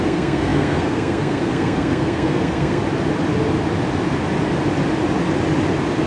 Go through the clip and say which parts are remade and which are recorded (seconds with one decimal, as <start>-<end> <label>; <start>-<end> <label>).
0.0-2.8 remade; 2.8-6.1 recorded